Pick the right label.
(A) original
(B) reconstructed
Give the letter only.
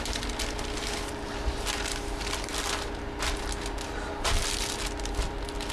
B